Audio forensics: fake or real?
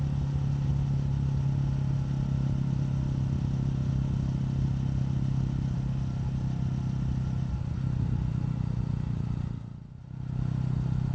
real